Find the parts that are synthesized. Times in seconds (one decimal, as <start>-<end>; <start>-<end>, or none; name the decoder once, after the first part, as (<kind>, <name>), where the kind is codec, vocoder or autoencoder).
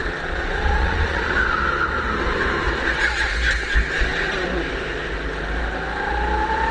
0.0-1.4 (vocoder, Vocos)